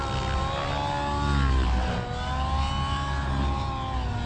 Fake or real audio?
real